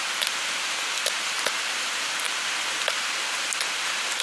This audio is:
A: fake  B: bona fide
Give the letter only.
B